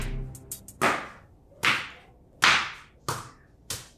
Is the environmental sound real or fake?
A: real